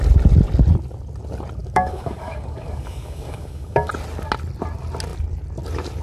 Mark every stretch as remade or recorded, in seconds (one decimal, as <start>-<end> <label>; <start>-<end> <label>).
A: 0.0-1.6 recorded; 1.6-3.9 remade; 3.9-6.0 recorded